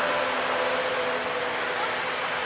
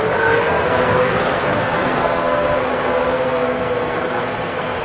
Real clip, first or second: first